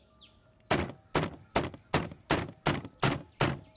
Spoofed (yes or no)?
no